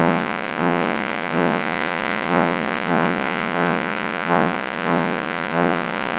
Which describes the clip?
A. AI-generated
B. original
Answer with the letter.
A